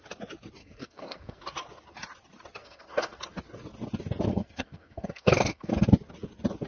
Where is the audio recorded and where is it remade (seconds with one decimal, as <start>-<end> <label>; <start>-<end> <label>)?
0.0-0.6 recorded; 0.6-1.4 remade; 1.4-2.6 recorded; 2.6-3.2 remade; 3.2-4.3 recorded; 4.3-5.7 remade; 5.7-6.7 recorded